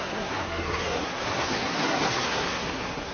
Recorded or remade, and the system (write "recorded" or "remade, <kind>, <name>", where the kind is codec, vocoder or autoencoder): remade, codec, SNAC